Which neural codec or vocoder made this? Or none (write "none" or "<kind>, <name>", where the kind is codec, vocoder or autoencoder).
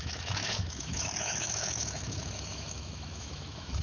autoencoder, DAC-VAE